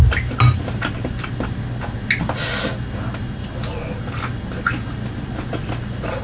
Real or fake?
real